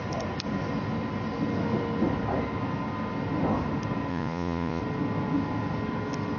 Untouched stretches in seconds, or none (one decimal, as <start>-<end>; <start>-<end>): 0.0-4.1; 4.8-6.4